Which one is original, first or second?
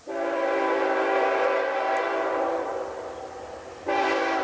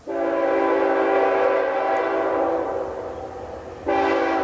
second